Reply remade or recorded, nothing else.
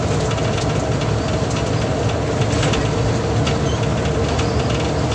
recorded